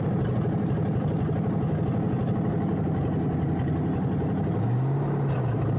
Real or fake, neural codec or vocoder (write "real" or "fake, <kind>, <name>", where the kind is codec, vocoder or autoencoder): real